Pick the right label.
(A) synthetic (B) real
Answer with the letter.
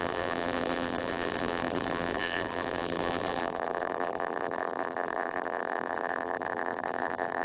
A